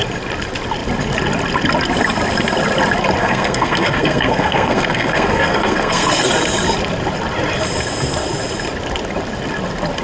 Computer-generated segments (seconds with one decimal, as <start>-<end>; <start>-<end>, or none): 3.2-6.3